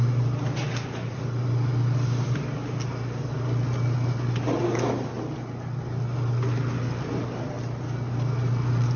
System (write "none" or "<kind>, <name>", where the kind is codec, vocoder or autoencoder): none